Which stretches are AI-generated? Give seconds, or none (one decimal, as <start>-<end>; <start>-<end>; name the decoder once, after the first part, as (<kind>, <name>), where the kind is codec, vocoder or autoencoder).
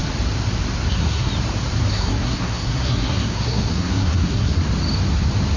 0.9-1.3 (codec, SNAC); 1.9-4.6